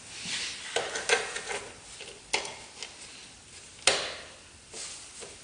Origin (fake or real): real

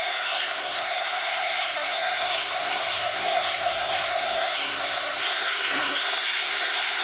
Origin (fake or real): fake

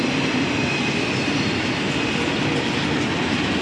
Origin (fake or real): real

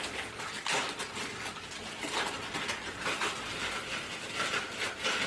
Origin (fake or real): real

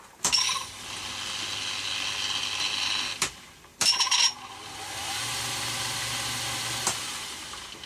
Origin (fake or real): real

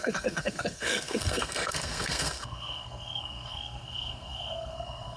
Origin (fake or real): fake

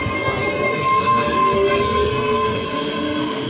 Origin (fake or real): fake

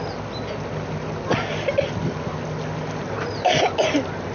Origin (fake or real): real